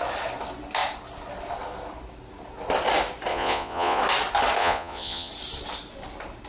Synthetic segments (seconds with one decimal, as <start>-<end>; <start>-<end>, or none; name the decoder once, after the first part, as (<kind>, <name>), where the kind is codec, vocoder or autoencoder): 3.3-4.0 (vocoder, Vocos); 4.6-5.3